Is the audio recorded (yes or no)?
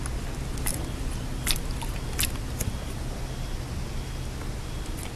yes